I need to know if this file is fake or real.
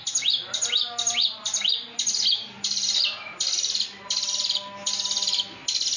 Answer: real